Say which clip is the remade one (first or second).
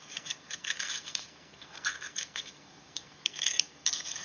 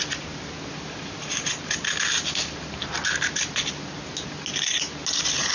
first